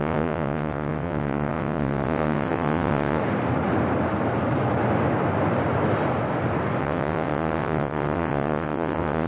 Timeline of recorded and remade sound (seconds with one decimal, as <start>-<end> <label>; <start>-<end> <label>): 0.0-3.2 remade; 3.2-6.8 recorded; 6.8-9.3 remade